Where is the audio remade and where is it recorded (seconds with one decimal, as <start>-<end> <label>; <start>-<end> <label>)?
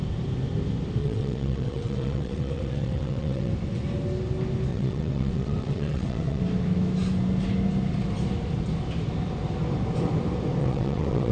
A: 0.0-1.0 recorded; 1.0-3.5 remade; 3.5-4.7 recorded; 4.7-6.4 remade; 6.4-10.6 recorded; 10.6-11.3 remade